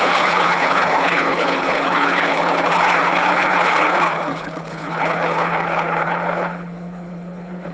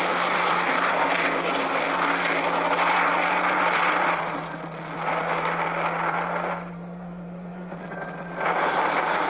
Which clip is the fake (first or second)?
first